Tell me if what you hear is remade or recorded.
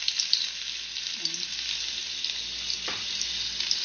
recorded